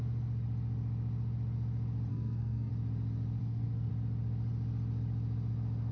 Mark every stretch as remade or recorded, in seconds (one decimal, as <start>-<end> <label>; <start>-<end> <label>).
0.0-2.1 recorded; 2.1-2.7 remade; 2.7-3.4 recorded; 3.4-3.9 remade; 3.9-5.9 recorded